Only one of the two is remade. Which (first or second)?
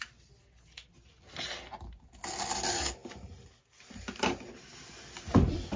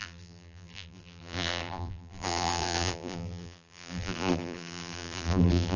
second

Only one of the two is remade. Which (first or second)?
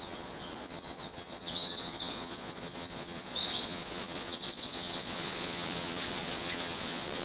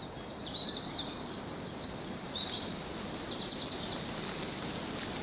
first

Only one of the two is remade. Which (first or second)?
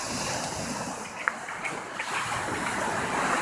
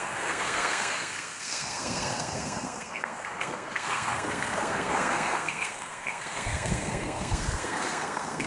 second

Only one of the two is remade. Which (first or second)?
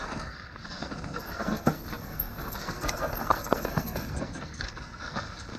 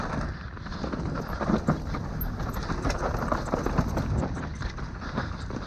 first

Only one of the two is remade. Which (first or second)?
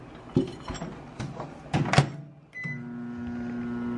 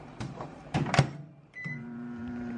second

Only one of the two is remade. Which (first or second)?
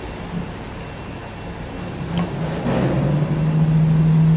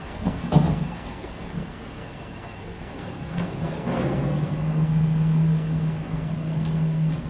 second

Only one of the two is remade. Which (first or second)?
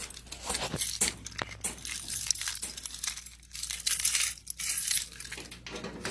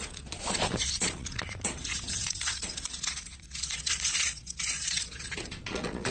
second